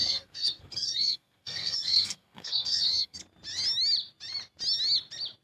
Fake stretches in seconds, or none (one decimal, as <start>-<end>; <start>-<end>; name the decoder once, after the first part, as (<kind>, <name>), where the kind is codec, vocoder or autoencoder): 0.0-3.2 (codec, SNAC)